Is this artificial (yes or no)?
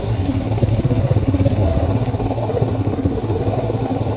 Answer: yes